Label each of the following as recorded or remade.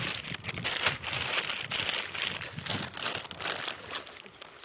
recorded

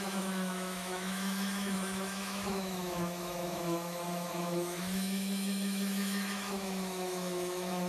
remade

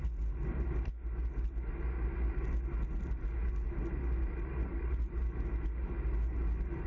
recorded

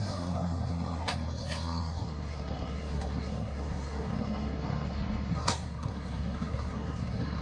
remade